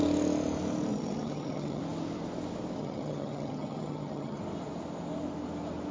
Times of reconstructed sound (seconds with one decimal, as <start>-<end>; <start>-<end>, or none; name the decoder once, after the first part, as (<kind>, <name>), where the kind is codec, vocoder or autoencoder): 0.9-1.8 (vocoder, HiFi-GAN); 2.8-4.4